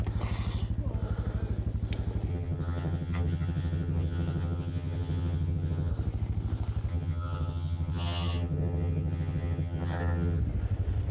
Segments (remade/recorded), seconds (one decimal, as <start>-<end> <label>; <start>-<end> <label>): 0.0-2.3 recorded; 2.3-5.9 remade; 5.9-6.9 recorded; 6.9-10.4 remade; 10.4-11.1 recorded

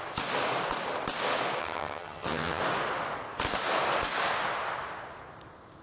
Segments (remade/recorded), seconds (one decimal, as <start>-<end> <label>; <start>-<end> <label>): 0.0-1.6 recorded; 1.6-2.6 remade; 2.6-5.8 recorded